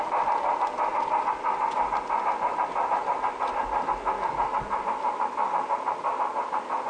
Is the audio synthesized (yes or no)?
no